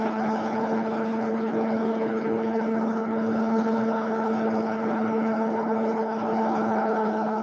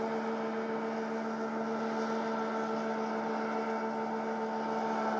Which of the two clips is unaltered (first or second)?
second